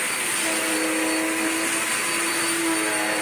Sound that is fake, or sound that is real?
real